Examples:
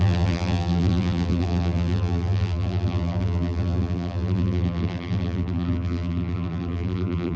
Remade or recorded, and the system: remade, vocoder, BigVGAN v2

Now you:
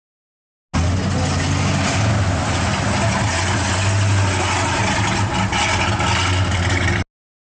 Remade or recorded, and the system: recorded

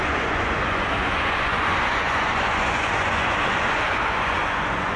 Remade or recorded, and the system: remade, vocoder, Vocos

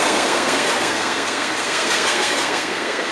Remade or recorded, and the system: remade, codec, SNAC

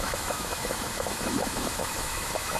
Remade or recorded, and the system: remade, autoencoder, DAC-VAE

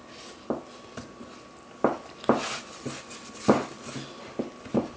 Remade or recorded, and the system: recorded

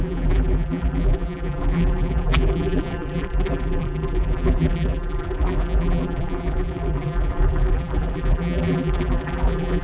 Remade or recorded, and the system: remade, vocoder, BigVGAN v2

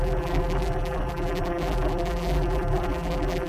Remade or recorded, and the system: remade, vocoder, BigVGAN v2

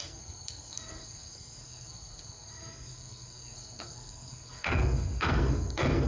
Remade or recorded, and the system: remade, codec, SNAC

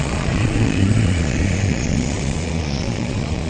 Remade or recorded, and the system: remade, vocoder, Vocos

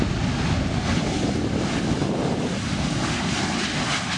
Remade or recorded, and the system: recorded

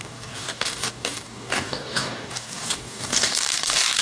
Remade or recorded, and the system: remade, codec, DAC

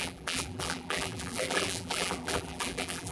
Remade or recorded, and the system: remade, vocoder, BigVGAN v2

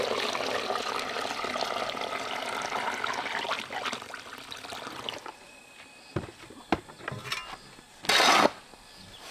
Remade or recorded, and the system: recorded